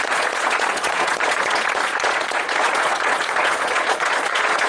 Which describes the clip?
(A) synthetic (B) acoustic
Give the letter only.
A